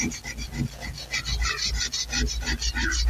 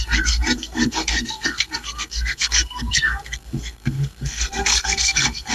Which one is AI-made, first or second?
second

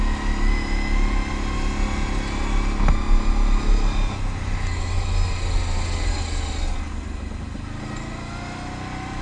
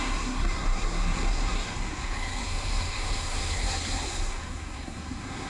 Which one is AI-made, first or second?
second